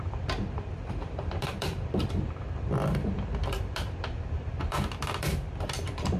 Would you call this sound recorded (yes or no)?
no